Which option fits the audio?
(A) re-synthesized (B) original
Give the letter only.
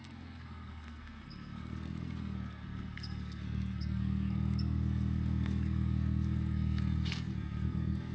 A